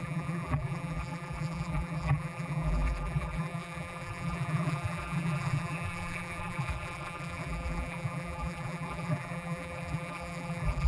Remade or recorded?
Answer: remade